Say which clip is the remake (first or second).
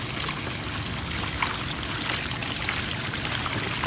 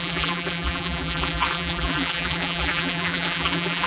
second